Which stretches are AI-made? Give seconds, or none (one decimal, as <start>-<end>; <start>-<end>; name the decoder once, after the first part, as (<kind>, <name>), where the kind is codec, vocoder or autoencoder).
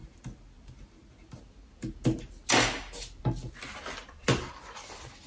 none